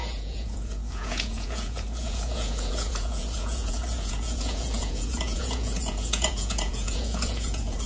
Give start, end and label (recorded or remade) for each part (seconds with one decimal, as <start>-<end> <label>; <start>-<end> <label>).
0.0-7.9 remade